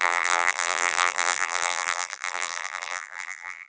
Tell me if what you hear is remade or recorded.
remade